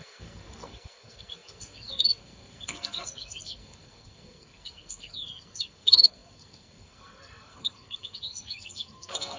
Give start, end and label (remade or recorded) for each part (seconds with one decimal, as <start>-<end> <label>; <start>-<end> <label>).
0.0-9.4 remade